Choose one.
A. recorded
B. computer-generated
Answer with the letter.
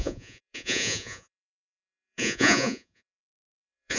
B